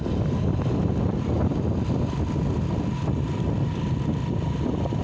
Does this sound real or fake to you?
real